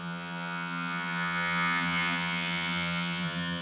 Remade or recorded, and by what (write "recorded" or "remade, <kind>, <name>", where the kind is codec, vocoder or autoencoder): remade, vocoder, HiFi-GAN